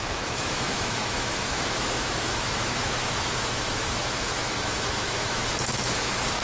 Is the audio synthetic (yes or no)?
yes